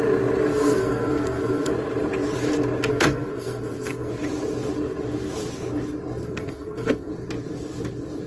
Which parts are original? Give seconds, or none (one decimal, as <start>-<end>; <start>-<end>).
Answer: 0.0-0.5; 1.7-2.9; 4.1-6.2; 7.1-8.3